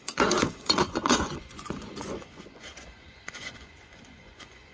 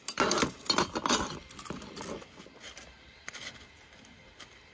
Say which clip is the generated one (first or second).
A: first